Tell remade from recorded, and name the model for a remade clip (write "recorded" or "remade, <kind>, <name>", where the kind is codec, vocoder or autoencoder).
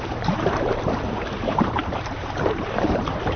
remade, vocoder, BigVGAN v2